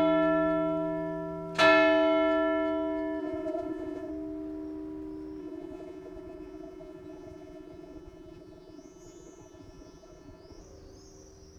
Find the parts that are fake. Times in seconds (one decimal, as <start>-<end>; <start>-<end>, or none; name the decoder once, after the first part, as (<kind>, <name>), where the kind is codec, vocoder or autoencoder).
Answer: 3.2-4.1 (vocoder, Vocos); 5.4-10.6